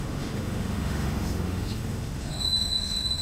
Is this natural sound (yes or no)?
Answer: no